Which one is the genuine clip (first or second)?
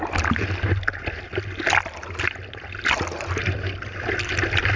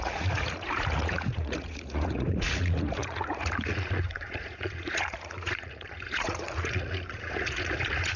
first